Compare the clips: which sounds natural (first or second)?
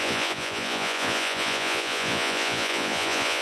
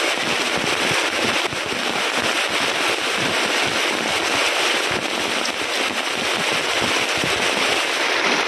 second